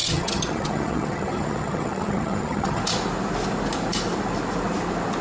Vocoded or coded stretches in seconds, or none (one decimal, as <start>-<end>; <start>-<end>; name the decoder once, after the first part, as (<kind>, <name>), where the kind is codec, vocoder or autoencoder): 0.0-2.8 (vocoder, HiFi-GAN)